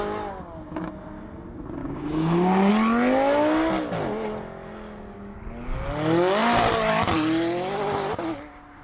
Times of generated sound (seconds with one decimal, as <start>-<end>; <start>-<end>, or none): 1.8-2.7